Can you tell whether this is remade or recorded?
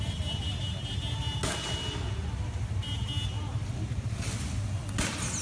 recorded